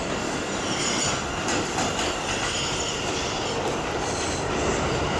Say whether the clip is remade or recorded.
recorded